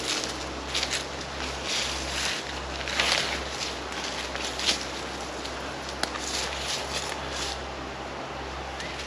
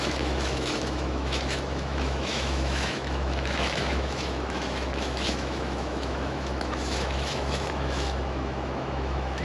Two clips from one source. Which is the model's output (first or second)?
second